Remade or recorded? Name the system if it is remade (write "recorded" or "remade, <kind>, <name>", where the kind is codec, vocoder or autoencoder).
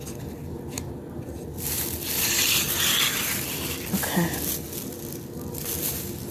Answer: recorded